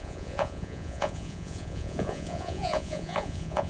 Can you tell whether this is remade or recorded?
remade